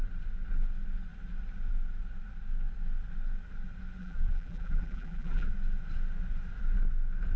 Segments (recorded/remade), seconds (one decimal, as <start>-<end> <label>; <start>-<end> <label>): 0.0-4.0 recorded; 4.0-5.5 remade; 5.5-7.4 recorded